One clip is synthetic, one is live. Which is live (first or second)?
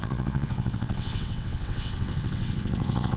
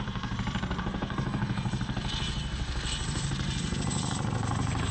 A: second